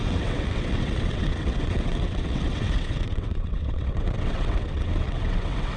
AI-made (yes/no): yes